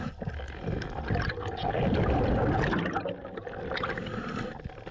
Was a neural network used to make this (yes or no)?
no